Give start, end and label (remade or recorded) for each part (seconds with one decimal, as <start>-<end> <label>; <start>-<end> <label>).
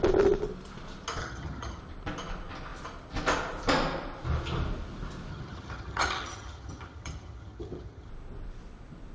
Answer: 0.0-1.2 recorded; 1.2-1.8 remade; 1.8-5.3 recorded; 5.3-8.1 remade; 8.1-9.1 recorded